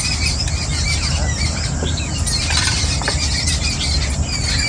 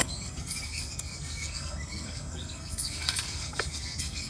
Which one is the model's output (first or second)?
second